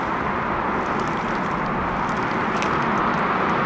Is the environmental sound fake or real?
real